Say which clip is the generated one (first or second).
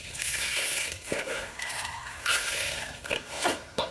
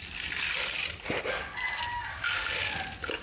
first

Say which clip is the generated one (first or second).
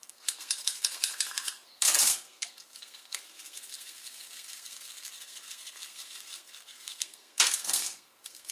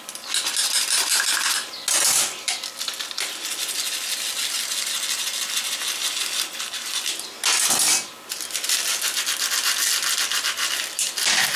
first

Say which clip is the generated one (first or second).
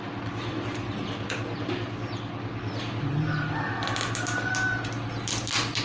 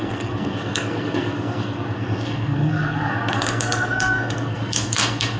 second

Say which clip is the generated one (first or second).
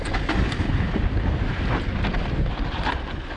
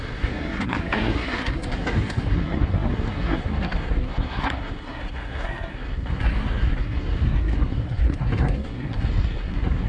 second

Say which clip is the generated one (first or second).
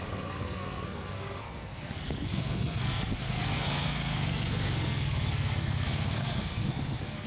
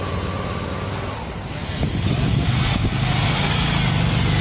first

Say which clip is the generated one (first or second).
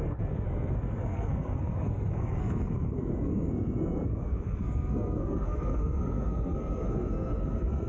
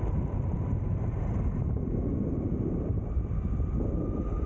first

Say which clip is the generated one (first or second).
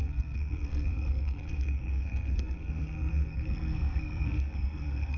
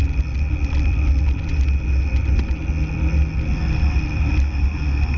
first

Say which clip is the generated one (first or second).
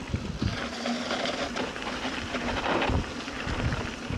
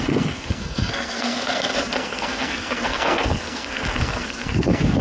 second